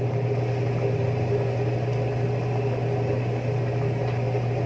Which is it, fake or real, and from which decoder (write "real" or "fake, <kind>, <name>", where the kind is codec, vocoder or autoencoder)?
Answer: fake, vocoder, BigVGAN v2